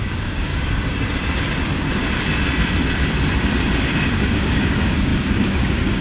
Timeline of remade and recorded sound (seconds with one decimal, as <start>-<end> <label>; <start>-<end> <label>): 0.0-0.5 remade; 0.5-4.1 recorded; 4.1-6.0 remade